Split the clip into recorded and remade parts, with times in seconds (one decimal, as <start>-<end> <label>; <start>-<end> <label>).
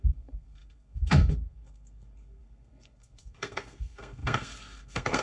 0.0-5.2 remade